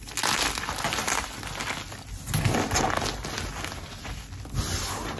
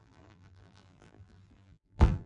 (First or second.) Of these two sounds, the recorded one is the first